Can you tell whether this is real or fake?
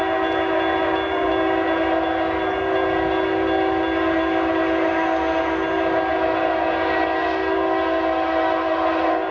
real